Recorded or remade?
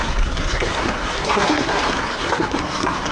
remade